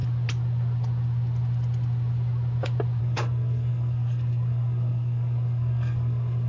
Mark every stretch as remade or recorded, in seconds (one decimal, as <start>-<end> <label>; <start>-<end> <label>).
0.0-3.0 recorded; 3.0-6.5 remade